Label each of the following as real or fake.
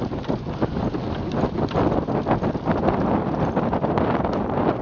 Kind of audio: real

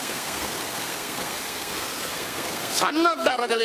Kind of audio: fake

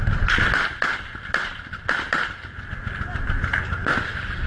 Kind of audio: real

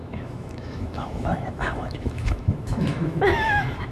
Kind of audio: fake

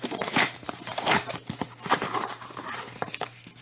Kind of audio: fake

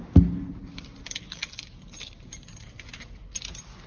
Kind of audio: real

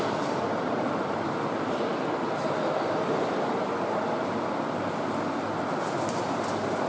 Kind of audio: fake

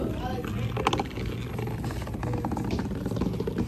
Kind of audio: real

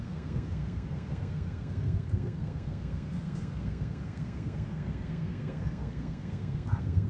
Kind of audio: fake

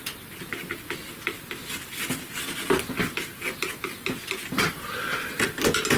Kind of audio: real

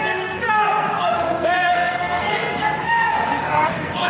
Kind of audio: fake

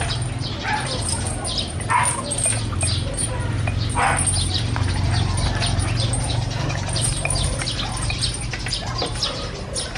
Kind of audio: real